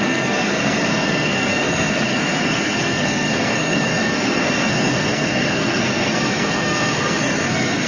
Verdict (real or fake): fake